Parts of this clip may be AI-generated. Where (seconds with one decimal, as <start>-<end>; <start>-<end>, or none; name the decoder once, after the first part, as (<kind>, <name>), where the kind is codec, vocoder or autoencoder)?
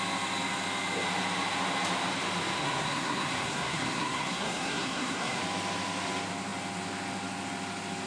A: 2.6-5.4 (codec, SNAC)